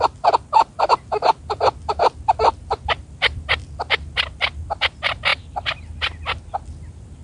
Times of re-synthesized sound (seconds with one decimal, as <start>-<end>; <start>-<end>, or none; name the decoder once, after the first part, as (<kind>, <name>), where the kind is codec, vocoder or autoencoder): none